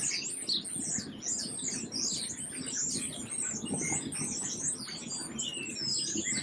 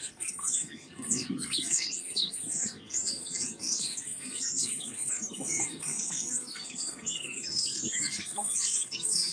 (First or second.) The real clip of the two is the first